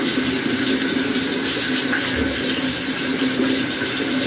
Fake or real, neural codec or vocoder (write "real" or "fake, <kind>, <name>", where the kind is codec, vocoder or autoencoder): real